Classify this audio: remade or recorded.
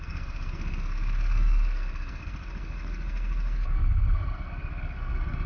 remade